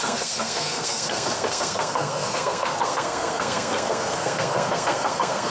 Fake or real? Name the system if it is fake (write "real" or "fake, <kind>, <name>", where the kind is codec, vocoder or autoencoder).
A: fake, codec, SNAC